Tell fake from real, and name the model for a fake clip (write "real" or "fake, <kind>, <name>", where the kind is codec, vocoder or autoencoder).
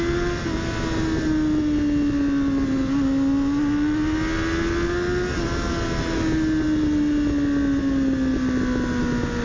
real